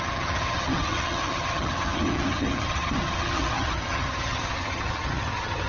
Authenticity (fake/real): fake